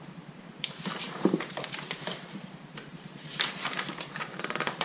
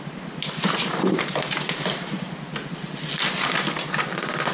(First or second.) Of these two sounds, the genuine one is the second